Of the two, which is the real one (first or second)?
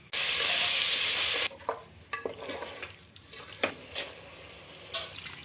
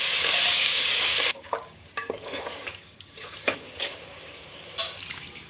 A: first